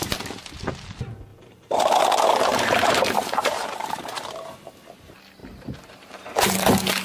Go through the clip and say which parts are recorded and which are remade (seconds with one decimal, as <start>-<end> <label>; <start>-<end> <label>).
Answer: 0.0-1.3 recorded; 1.3-1.9 remade; 1.9-2.5 recorded; 2.5-4.4 remade; 4.4-5.4 recorded; 5.4-6.3 remade; 6.3-7.0 recorded

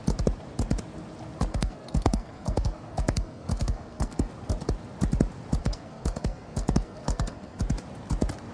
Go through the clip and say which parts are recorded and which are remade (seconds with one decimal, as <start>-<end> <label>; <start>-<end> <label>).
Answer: 0.0-1.5 recorded; 1.5-4.3 remade; 4.3-5.6 recorded; 5.6-7.6 remade; 7.6-8.5 recorded

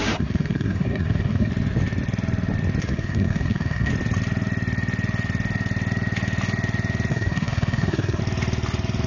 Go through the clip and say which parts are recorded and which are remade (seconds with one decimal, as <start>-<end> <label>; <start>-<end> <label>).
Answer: 0.0-1.5 remade; 1.5-2.8 recorded; 2.8-3.9 remade; 3.9-7.1 recorded; 7.1-8.2 remade; 8.2-9.1 recorded

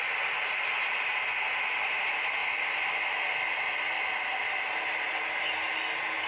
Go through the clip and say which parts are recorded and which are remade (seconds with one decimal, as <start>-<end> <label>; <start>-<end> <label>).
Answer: 0.0-6.3 recorded

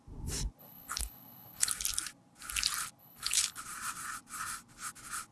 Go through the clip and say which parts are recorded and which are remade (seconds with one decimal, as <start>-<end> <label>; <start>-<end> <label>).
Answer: 0.0-0.6 recorded; 0.6-1.7 remade; 1.7-3.0 recorded; 3.0-3.6 remade; 3.6-5.3 recorded

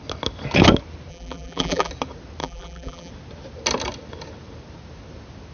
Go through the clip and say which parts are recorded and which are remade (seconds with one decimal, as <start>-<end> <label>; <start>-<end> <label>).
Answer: 0.0-1.1 recorded; 1.1-1.9 remade; 1.9-2.4 recorded; 2.4-3.1 remade; 3.1-5.5 recorded

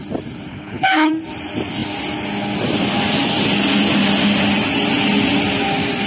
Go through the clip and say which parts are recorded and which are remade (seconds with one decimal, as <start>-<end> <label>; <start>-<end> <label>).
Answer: 0.0-0.5 recorded; 0.5-1.1 remade; 1.1-6.1 recorded